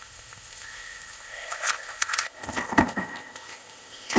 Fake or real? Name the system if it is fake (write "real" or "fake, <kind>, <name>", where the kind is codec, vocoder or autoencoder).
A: fake, codec, ZipCodec